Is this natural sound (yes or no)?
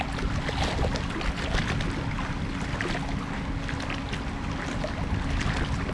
yes